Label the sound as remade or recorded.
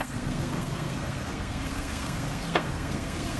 remade